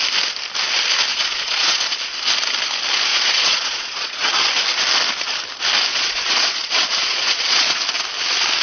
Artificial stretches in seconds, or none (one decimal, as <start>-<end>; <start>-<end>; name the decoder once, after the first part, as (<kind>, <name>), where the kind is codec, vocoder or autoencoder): 1.1-1.9 (vocoder, Vocos); 3.1-4.5; 5.9-7.8